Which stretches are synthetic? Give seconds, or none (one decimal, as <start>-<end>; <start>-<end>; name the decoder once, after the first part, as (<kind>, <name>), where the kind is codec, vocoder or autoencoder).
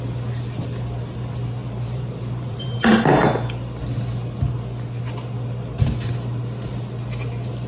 1.6-3.0 (vocoder, BigVGAN v2)